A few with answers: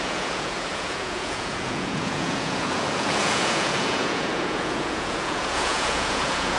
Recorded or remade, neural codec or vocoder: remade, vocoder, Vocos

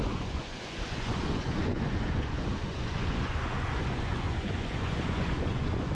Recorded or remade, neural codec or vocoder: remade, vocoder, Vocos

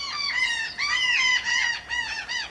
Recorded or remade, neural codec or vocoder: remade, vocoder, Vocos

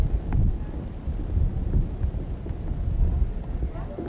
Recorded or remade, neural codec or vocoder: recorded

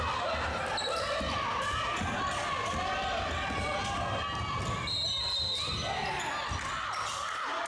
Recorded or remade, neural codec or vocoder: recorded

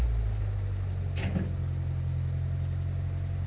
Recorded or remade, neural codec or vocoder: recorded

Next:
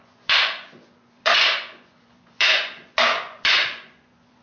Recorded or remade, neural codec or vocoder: remade, vocoder, Vocos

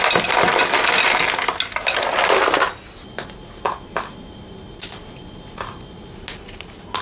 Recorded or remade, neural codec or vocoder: recorded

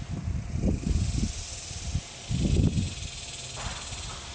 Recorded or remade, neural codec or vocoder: recorded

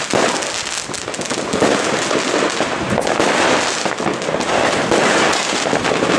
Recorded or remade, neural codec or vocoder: recorded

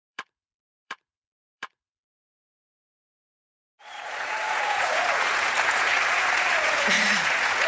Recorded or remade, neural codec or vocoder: remade, vocoder, Vocos